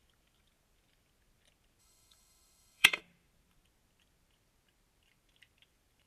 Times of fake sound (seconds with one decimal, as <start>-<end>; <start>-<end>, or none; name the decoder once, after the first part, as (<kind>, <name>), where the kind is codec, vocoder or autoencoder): 1.8-3.0 (autoencoder, DAC-VAE)